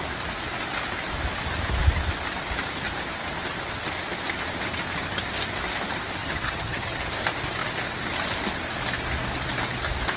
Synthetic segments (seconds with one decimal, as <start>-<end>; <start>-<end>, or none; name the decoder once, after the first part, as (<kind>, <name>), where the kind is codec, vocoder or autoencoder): 6.2-7.0 (vocoder, HiFi-GAN)